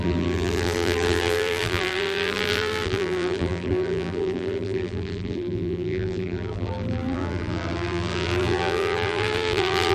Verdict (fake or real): fake